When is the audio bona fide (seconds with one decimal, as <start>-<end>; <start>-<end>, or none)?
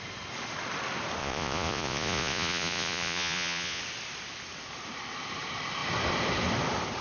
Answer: 0.0-1.2; 3.8-7.0